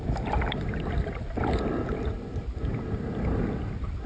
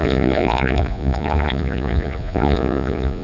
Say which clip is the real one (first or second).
first